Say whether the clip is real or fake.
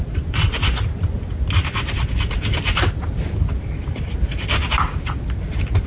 real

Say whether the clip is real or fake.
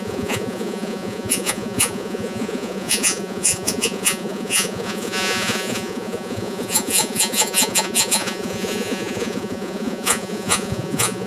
fake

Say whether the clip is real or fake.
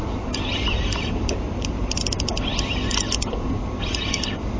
real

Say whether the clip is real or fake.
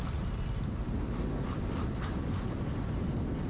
real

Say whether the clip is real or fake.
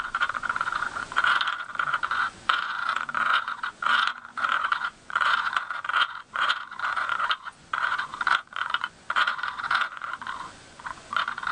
fake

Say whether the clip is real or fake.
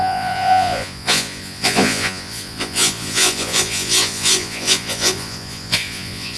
fake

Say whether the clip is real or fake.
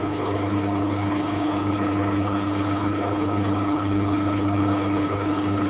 fake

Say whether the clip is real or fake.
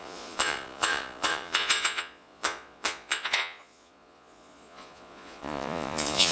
fake